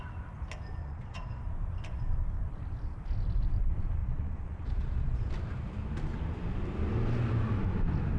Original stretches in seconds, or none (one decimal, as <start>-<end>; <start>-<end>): 0.0-0.8; 1.4-4.0; 5.3-8.2